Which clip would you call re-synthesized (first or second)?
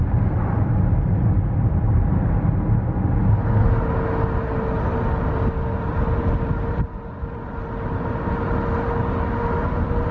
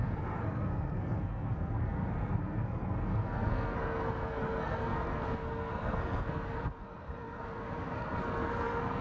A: second